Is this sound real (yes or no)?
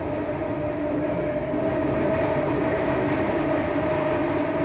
yes